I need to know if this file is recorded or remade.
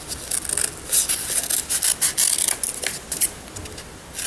recorded